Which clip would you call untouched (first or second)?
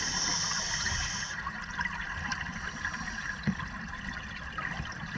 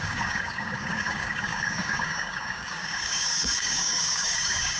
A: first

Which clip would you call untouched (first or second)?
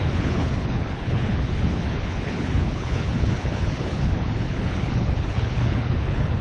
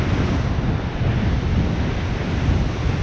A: second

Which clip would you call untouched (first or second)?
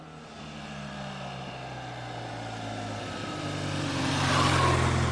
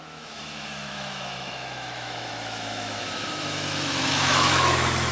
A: first